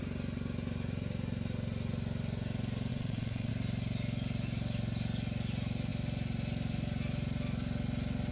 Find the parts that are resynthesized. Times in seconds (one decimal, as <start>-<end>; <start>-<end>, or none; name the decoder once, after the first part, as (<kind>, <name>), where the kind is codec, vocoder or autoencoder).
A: 2.9-3.5 (vocoder, WaveNeXt)